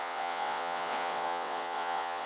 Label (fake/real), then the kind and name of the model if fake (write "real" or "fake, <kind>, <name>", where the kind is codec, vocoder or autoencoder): fake, vocoder, WaveNeXt